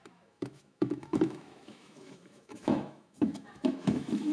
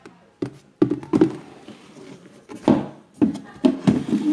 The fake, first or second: first